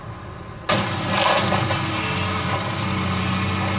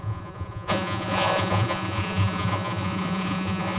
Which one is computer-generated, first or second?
second